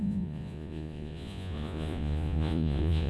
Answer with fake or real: fake